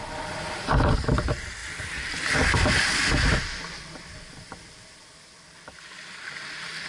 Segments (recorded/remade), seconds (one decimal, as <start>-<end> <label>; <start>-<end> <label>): 0.0-6.9 remade